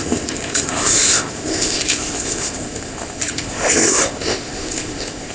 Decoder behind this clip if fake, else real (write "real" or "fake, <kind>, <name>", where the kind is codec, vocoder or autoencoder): fake, codec, ZipCodec